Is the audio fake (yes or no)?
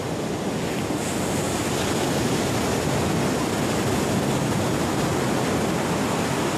no